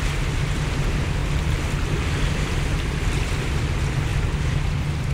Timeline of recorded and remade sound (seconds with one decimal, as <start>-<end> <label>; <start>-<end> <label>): 0.0-5.1 recorded